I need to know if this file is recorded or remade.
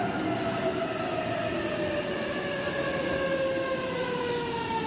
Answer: recorded